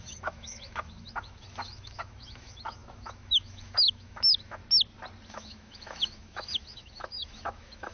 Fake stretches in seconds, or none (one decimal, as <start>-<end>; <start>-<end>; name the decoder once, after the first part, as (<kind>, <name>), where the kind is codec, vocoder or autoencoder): 0.0-4.6 (autoencoder, DAC-VAE); 5.3-7.9